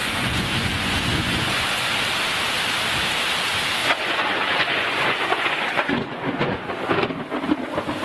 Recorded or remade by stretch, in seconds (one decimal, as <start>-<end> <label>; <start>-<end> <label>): 0.0-1.9 remade; 1.9-3.8 recorded; 3.8-6.7 remade; 6.7-8.0 recorded